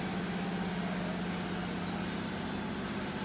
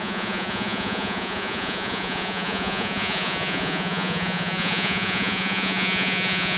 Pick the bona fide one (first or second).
first